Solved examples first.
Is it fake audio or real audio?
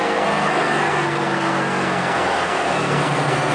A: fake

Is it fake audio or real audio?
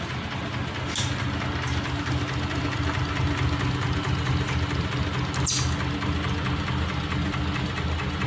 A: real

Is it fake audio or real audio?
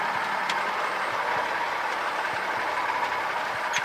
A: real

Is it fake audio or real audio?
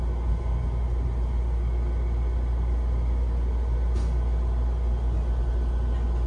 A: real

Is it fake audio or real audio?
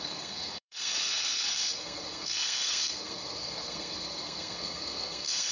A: fake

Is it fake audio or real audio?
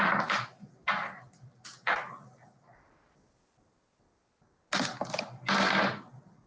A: real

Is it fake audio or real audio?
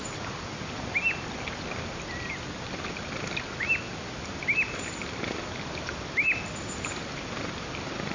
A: real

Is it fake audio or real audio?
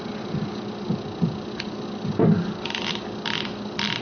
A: real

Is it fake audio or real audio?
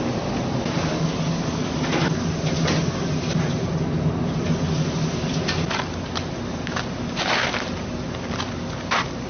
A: real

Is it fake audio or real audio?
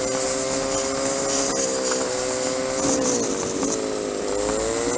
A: real